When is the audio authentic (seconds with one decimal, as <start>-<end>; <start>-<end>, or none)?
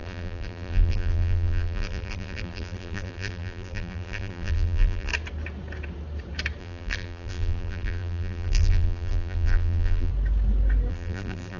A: 5.1-6.6; 10.1-10.9